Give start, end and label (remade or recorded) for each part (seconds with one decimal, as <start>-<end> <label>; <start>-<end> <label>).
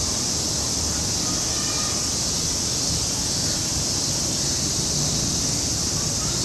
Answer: 0.0-6.4 recorded